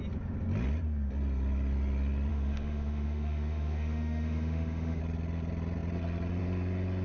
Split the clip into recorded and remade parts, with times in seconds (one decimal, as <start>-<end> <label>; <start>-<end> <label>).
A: 0.0-2.3 recorded; 2.3-5.0 remade; 5.0-7.0 recorded